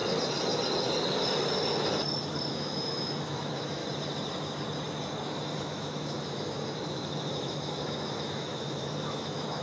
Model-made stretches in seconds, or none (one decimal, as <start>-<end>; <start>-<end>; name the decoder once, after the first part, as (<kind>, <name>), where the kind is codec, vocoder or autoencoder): 2.5-3.8 (autoencoder, DAC-VAE); 5.6-9.6